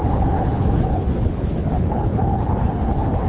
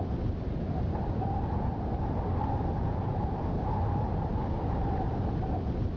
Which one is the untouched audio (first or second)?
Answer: second